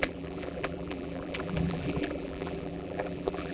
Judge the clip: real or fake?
fake